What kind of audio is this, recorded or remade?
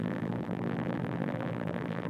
remade